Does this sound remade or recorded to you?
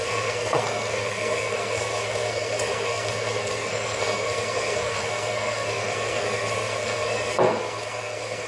remade